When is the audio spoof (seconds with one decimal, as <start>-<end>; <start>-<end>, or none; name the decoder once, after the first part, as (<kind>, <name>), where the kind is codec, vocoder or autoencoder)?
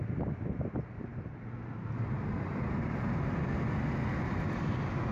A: none